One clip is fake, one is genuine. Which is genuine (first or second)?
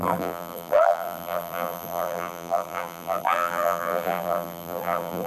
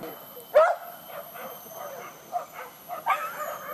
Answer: second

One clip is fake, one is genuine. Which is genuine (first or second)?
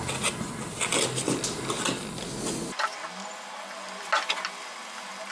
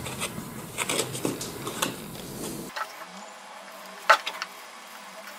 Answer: first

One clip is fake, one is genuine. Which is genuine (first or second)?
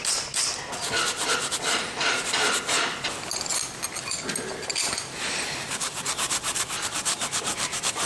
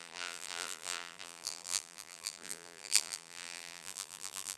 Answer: first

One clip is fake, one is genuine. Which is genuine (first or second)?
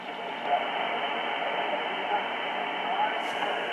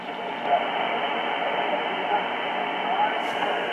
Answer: second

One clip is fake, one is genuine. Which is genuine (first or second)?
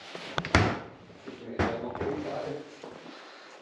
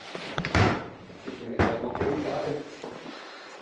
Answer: first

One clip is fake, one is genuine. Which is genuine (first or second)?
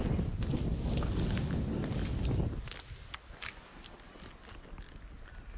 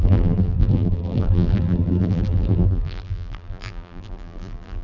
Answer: first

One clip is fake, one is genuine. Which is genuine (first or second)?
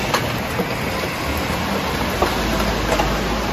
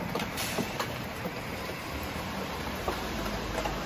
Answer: first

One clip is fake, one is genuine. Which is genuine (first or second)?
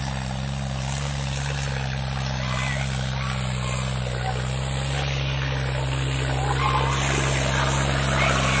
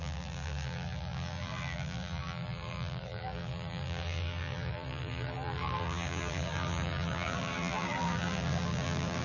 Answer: first